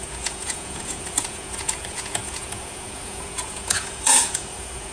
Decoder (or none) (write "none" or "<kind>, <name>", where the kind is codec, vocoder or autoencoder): vocoder, Vocos